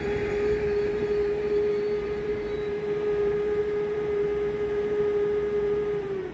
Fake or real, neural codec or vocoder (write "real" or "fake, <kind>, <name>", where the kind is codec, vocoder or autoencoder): fake, vocoder, BigVGAN v2